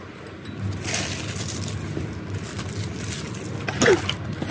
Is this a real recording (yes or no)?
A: yes